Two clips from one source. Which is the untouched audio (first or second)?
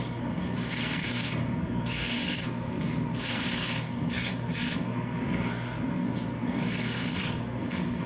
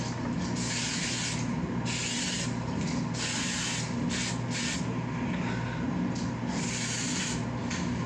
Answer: second